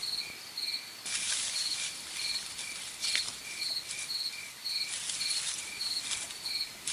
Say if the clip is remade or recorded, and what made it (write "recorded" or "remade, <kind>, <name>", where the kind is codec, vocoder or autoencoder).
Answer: recorded